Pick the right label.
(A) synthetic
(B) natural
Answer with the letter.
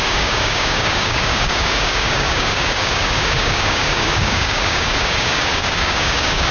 A